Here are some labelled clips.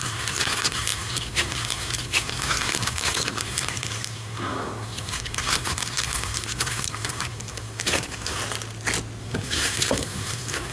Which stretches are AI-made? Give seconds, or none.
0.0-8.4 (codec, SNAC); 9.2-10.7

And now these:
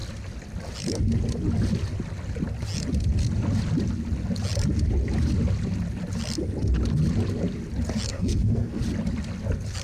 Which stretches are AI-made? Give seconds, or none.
8.1-8.8 (codec, SNAC)

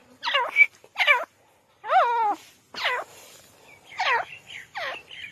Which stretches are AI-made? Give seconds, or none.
none

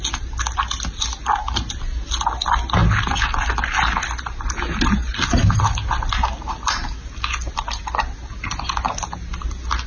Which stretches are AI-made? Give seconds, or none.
none

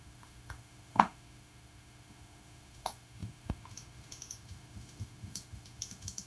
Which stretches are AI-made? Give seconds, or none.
0.0-6.3 (autoencoder, DAC-VAE)

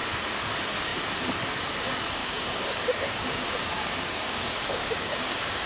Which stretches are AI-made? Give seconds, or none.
2.2-5.7 (codec, DAC)

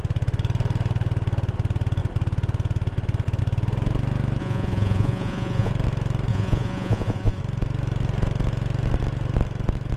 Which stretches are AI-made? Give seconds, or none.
4.4-5.7 (vocoder, Vocos); 6.3-7.4